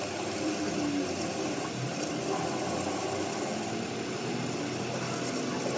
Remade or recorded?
recorded